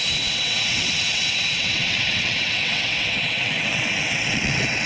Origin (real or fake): fake